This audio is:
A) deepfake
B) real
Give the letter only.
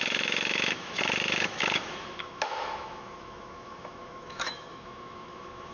A